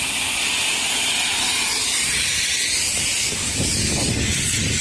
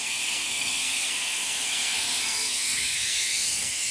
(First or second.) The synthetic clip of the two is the second